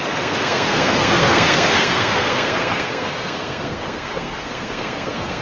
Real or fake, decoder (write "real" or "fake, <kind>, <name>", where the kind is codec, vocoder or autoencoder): fake, codec, SNAC